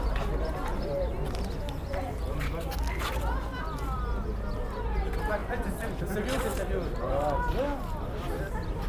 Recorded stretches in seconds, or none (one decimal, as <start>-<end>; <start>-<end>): 0.0-8.9